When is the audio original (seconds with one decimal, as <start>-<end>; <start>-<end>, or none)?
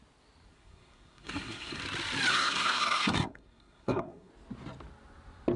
0.0-0.5; 1.8-2.3; 4.3-5.6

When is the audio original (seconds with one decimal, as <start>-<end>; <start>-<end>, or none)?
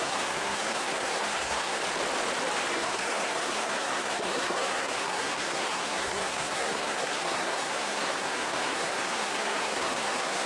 1.8-2.7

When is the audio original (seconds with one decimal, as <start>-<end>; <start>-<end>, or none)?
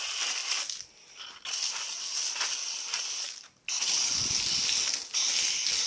0.0-5.9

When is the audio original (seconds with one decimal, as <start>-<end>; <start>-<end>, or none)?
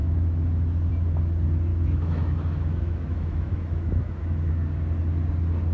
0.9-1.7; 4.5-5.7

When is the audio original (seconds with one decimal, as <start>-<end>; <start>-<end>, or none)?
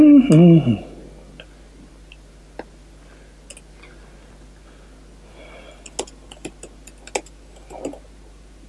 0.0-8.7